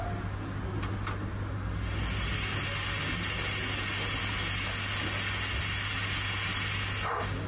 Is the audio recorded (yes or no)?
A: yes